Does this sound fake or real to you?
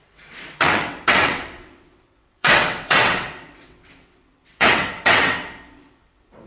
fake